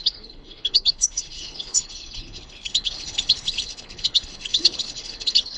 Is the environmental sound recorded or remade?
remade